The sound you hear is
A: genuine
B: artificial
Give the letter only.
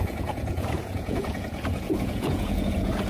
B